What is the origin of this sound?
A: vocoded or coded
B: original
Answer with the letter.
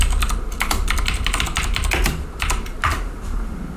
A